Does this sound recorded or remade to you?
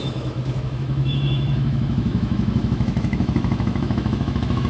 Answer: remade